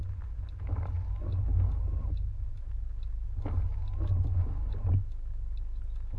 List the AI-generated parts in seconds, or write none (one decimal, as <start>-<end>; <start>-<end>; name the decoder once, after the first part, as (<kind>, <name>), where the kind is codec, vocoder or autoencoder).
none